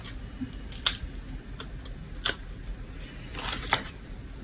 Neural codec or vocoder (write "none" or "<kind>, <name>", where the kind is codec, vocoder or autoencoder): none